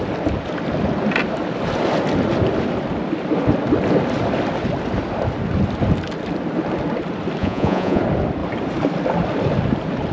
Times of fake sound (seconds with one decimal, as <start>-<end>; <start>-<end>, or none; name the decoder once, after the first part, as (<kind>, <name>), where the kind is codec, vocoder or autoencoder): 7.4-8.0 (vocoder, Vocos)